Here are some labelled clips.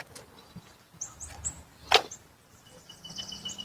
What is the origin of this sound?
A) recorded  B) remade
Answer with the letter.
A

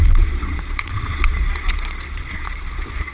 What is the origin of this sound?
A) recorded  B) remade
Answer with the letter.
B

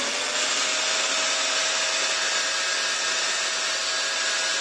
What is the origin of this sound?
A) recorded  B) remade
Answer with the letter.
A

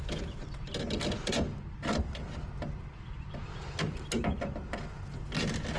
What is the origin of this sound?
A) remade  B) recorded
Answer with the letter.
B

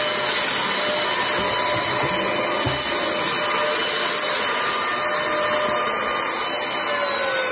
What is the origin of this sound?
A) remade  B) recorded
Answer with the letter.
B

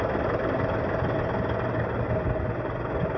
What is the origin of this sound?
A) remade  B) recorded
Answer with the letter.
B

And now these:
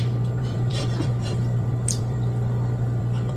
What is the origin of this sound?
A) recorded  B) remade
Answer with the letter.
B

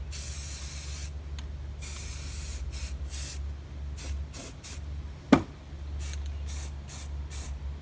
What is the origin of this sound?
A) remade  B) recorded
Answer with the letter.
B